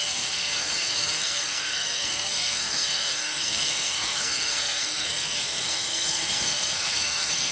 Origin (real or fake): fake